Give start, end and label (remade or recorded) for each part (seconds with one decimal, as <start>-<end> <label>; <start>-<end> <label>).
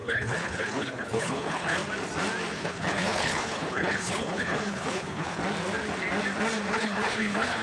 0.0-1.8 remade; 1.8-2.5 recorded; 2.5-5.4 remade; 5.4-6.7 recorded; 6.7-7.6 remade